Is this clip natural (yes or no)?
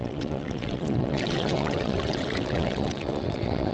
no